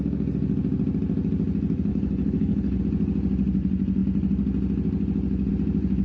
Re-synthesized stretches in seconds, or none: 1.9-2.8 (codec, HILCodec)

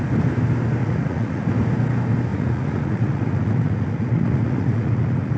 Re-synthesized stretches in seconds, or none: 0.8-1.5 (vocoder, Vocos); 2.3-5.4

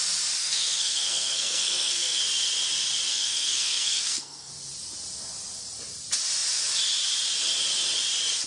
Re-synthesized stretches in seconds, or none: 0.4-2.2 (codec, SNAC); 3.1-4.5

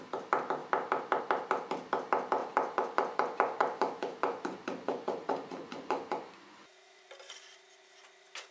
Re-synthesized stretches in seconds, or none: 2.4-7.1 (vocoder, Vocos)

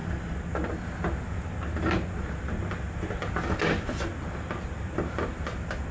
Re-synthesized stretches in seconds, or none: none